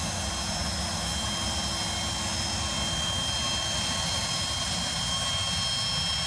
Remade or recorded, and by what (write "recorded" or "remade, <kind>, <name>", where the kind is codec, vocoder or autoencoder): recorded